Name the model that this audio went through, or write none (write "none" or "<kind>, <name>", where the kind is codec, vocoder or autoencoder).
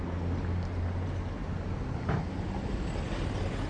none